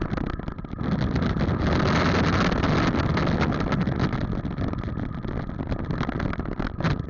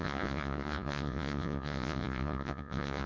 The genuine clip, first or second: first